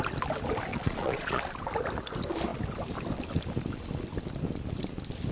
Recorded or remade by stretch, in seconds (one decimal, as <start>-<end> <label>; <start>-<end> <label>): 0.0-0.7 recorded; 0.7-1.4 remade; 1.4-5.3 recorded